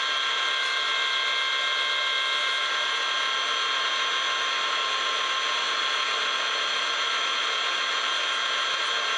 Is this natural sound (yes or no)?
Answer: yes